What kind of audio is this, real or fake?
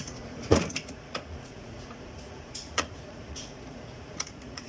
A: fake